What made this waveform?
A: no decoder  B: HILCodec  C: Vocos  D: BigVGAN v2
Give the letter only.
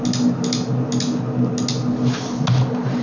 A